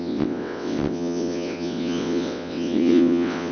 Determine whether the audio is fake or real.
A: fake